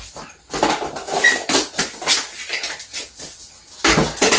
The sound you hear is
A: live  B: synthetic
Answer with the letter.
A